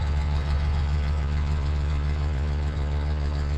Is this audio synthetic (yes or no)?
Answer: yes